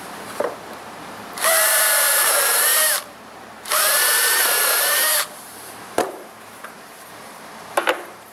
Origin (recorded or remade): remade